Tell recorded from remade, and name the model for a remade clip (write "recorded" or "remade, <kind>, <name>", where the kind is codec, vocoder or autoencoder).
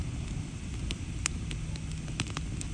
recorded